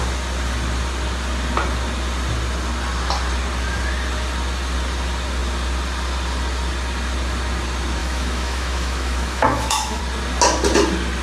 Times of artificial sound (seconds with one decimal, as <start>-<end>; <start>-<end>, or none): 8.0-10.0